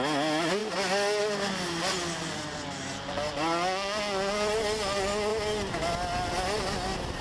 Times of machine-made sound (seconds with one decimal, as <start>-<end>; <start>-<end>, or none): none